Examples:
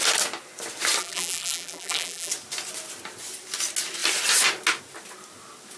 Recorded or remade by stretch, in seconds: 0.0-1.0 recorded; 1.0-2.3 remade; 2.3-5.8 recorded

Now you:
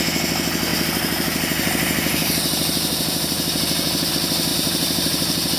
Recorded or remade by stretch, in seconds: 0.0-0.7 recorded; 0.7-4.1 remade; 4.1-4.5 recorded; 4.5-5.6 remade